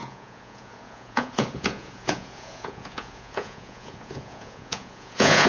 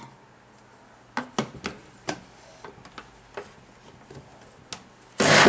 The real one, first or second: second